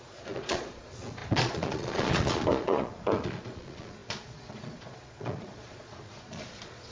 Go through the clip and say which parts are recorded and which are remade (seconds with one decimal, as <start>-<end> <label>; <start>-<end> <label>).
0.0-6.9 remade